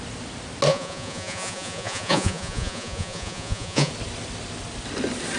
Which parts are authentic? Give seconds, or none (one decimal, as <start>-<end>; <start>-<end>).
0.0-0.7; 3.9-5.4